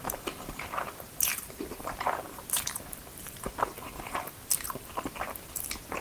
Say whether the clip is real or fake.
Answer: fake